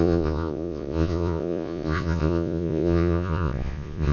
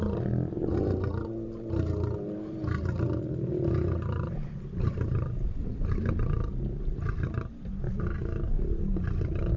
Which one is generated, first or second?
first